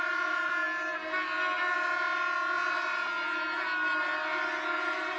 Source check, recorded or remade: recorded